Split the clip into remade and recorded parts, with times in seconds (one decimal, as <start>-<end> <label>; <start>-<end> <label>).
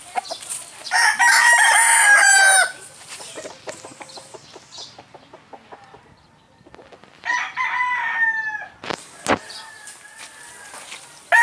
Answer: 0.0-11.4 recorded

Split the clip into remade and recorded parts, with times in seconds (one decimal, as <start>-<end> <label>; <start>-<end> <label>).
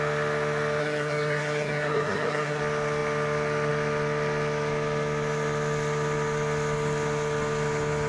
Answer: 0.0-0.8 recorded; 0.8-2.6 remade; 2.6-8.1 recorded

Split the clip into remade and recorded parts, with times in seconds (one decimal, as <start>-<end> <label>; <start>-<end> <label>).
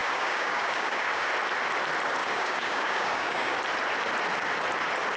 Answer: 0.0-1.3 remade; 1.3-2.2 recorded; 2.2-3.6 remade; 3.6-5.2 recorded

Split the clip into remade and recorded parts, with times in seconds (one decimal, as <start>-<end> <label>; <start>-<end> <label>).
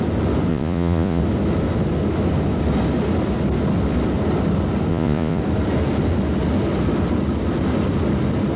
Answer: 0.0-0.5 recorded; 0.5-1.2 remade; 1.2-4.9 recorded; 4.9-5.4 remade; 5.4-8.6 recorded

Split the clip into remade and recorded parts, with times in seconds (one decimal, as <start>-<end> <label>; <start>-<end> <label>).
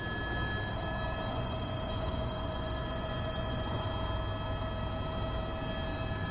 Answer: 0.0-1.3 recorded; 1.3-3.9 remade; 3.9-6.3 recorded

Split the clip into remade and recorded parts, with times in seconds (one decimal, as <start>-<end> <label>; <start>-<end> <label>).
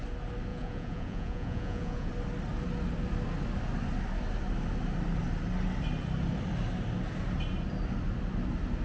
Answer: 0.0-0.5 recorded; 0.5-2.1 remade; 2.1-8.8 recorded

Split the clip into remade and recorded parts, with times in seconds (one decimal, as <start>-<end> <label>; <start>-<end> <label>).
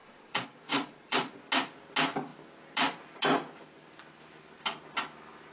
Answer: 0.0-1.4 remade; 1.4-5.5 recorded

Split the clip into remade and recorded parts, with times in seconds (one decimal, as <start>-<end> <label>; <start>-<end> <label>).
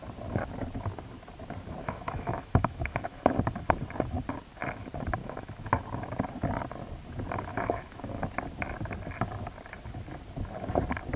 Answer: 0.0-1.8 recorded; 1.8-3.3 remade; 3.3-5.2 recorded; 5.2-5.7 remade; 5.7-7.5 recorded; 7.5-8.2 remade; 8.2-11.2 recorded